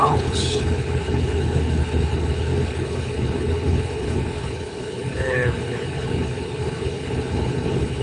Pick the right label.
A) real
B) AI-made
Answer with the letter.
B